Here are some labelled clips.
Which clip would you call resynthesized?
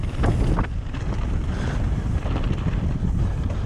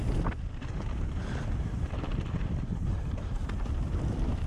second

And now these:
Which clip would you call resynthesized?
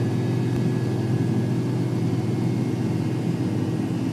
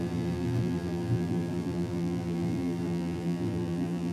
second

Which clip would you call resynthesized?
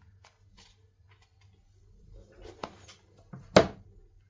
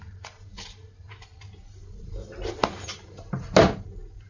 second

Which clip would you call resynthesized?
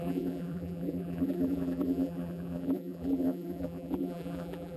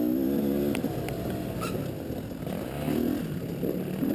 first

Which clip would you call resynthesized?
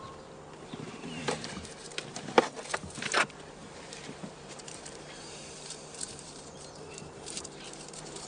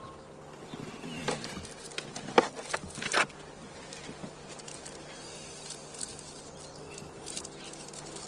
first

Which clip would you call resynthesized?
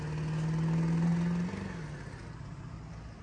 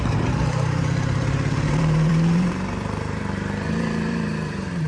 second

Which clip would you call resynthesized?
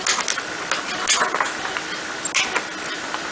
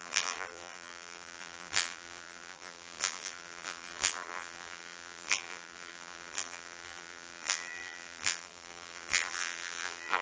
second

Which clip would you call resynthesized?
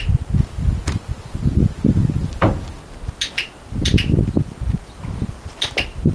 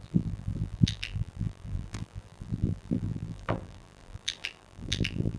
second